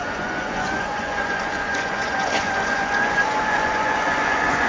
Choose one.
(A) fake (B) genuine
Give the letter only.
A